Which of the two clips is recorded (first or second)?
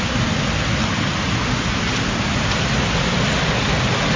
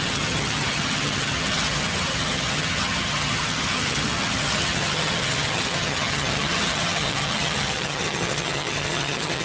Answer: first